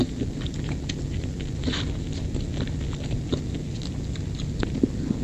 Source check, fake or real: real